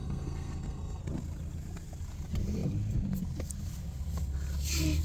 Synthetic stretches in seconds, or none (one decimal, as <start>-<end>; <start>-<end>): 0.0-1.0